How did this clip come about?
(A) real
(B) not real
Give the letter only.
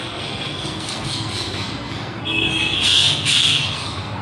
B